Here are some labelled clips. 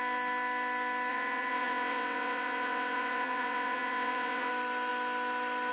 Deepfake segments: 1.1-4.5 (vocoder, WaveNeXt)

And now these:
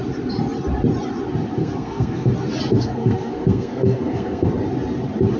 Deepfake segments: 1.6-2.3 (codec, SNAC); 2.7-4.5

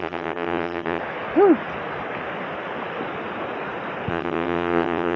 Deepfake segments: 0.0-1.0 (vocoder, HiFi-GAN); 4.1-5.2

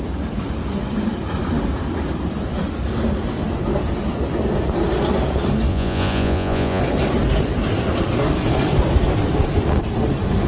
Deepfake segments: 5.7-6.8 (vocoder, Vocos)

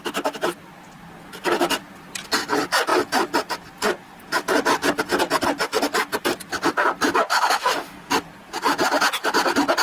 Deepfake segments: 7.3-8.1 (autoencoder, DAC-VAE)

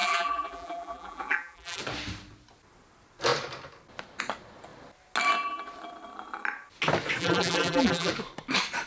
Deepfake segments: 0.0-1.8 (vocoder, BigVGAN v2); 7.2-8.1